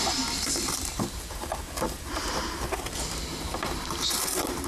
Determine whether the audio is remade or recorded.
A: remade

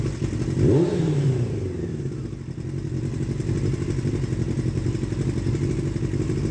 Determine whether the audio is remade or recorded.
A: remade